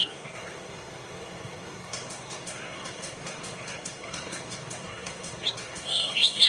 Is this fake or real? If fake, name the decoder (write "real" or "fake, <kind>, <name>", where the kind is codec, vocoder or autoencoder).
fake, codec, SNAC